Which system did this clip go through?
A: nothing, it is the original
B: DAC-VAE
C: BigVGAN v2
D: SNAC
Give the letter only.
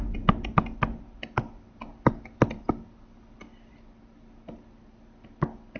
A